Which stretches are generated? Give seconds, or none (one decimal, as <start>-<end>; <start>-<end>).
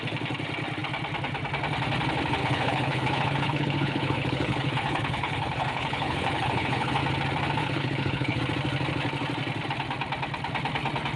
2.4-7.0; 7.6-8.4